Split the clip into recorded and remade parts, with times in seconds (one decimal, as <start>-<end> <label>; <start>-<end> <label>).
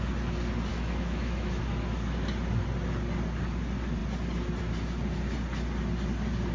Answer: 0.0-0.7 recorded; 0.7-1.6 remade; 1.6-6.5 recorded